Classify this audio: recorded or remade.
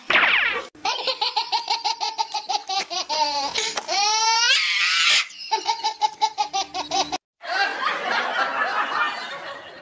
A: recorded